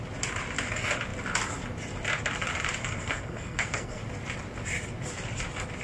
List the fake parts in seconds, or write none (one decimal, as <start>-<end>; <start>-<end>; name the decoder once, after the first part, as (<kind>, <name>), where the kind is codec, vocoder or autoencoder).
2.8-4.0 (codec, SNAC)